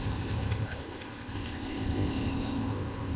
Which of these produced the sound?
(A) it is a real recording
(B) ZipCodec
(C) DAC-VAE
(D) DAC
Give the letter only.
B